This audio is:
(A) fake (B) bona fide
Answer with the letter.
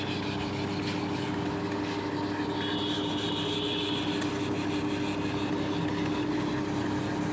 B